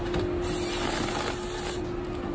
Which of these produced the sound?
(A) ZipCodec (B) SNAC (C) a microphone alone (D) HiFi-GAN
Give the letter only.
C